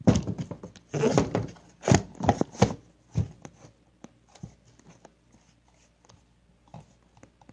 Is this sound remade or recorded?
recorded